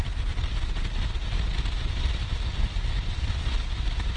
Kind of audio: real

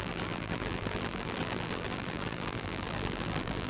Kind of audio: fake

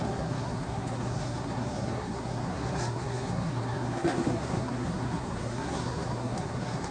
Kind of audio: fake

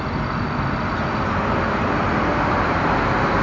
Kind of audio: real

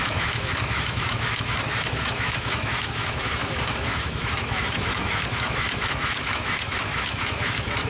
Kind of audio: fake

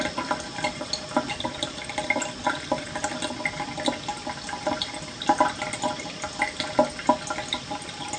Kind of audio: real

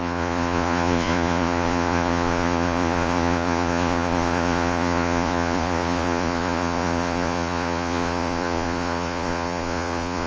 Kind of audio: fake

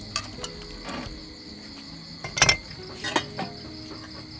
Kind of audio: real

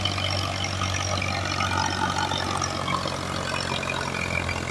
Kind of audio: real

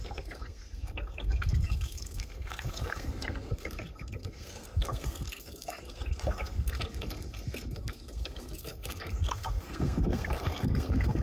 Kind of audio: fake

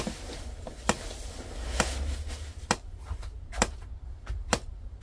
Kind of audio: real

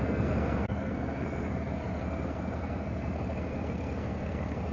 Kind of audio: fake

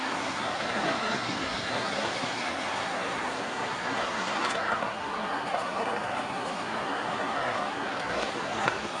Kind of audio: fake